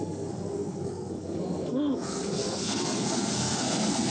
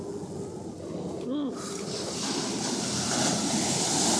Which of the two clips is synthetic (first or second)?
first